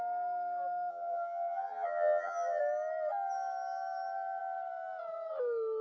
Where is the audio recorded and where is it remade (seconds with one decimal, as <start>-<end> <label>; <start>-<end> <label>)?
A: 0.0-0.9 recorded; 0.9-2.6 remade; 2.6-5.8 recorded